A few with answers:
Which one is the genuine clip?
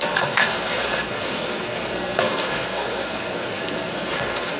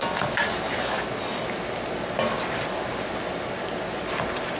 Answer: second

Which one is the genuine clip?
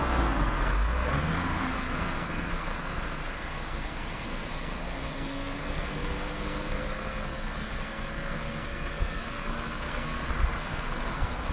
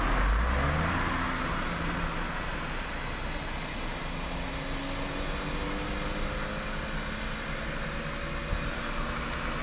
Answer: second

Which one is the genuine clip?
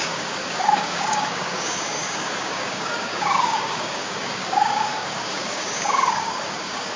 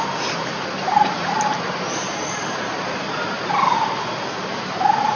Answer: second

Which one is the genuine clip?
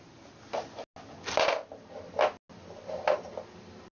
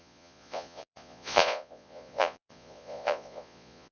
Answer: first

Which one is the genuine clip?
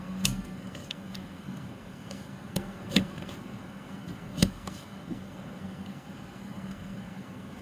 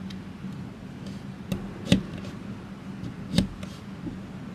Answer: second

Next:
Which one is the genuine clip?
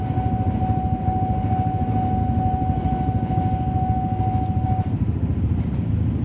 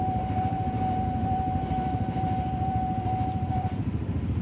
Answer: first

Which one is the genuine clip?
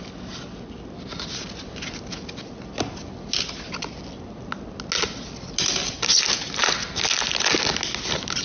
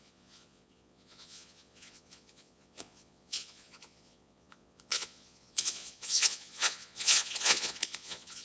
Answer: first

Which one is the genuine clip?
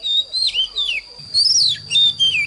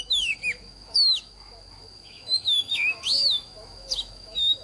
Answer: first